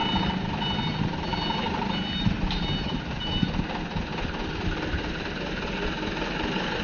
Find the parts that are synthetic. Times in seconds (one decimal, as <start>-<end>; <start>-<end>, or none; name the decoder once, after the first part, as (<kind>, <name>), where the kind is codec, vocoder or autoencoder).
1.3-5.4 (vocoder, BigVGAN v2)